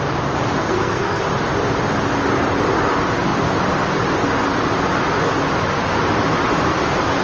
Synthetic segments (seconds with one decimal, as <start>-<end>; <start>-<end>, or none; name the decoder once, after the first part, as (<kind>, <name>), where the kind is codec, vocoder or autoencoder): 0.6-1.2 (codec, SNAC)